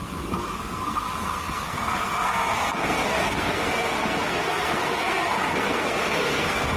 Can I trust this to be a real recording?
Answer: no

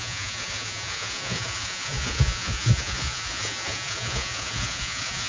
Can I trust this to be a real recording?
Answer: no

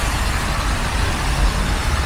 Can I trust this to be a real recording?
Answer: yes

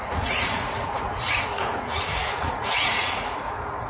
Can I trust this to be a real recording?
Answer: no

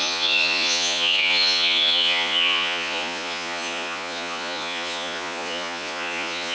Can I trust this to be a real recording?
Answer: no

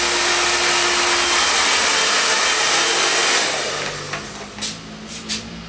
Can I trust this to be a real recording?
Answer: yes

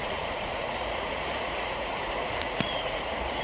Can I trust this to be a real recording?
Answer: no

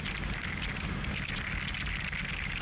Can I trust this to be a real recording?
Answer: yes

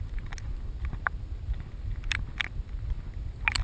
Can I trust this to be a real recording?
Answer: yes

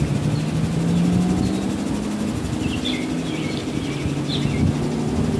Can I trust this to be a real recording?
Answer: yes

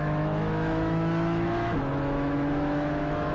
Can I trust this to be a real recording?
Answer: no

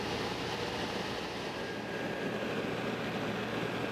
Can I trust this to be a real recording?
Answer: yes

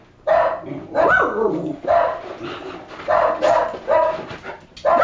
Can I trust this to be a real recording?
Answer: yes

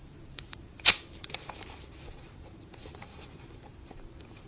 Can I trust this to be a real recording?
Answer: no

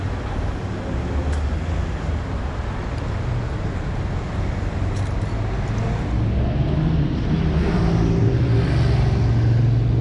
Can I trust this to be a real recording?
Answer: yes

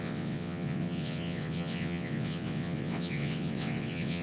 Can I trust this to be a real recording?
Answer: no